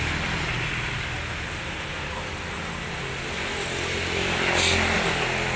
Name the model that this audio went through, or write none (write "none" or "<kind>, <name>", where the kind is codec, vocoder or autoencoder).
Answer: none